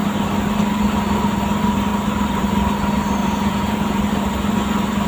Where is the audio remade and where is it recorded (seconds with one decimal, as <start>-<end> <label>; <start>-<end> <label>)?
0.0-3.2 recorded; 3.2-4.0 remade; 4.0-5.1 recorded